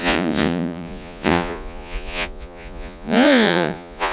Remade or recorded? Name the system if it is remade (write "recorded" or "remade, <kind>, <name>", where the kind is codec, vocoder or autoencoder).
remade, vocoder, Vocos